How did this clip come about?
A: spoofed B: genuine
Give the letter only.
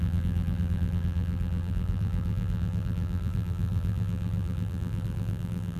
A